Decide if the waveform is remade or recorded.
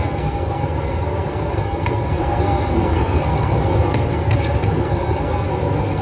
remade